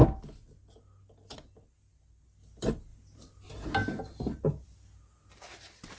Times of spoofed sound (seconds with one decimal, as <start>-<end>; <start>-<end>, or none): none